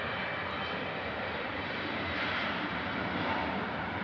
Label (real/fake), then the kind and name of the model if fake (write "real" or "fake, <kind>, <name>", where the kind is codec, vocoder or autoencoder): fake, vocoder, BigVGAN v2